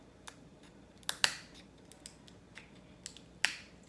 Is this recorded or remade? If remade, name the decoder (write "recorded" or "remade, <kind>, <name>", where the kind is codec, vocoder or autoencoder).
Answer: recorded